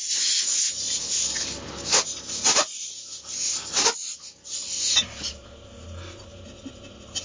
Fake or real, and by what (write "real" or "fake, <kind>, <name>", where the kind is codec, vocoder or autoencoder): real